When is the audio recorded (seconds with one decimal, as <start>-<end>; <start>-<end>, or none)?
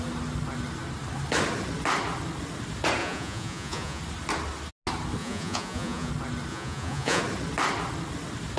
0.0-3.0; 4.0-5.2; 6.1-6.5; 7.2-8.6